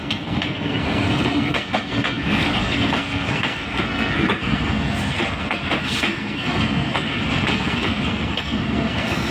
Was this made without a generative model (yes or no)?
no